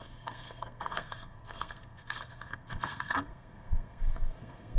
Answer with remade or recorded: remade